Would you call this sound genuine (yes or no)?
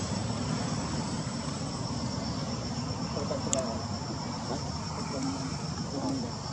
no